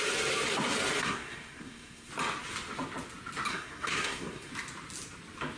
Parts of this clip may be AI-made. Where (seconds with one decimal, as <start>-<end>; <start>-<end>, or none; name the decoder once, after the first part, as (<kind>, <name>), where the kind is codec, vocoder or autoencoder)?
1.0-2.1 (codec, SNAC); 3.5-4.5